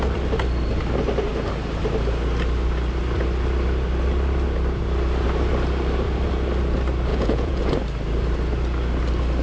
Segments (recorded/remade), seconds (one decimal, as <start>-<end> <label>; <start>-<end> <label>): 0.0-7.1 recorded; 7.1-7.7 remade; 7.7-9.4 recorded